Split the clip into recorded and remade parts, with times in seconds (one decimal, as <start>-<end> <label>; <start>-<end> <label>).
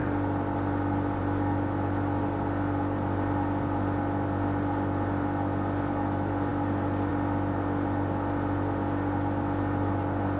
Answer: 0.0-10.4 recorded